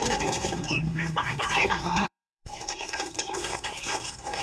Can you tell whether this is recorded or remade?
remade